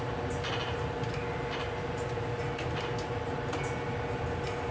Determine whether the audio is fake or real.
real